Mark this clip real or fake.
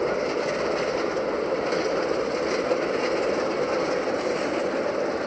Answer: real